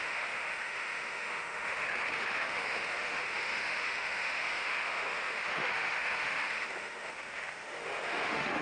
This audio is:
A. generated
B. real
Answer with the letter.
A